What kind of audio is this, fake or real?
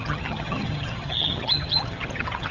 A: fake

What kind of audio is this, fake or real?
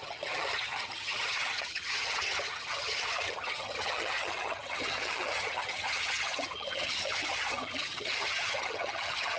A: fake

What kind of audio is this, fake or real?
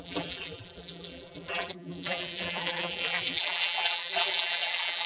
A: fake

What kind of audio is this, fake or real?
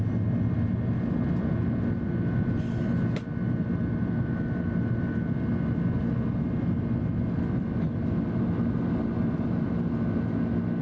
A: real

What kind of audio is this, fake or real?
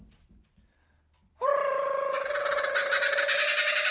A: real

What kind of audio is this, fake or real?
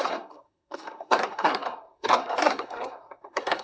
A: fake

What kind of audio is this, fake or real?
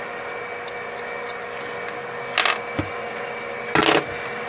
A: real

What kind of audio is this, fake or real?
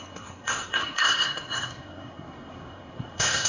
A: fake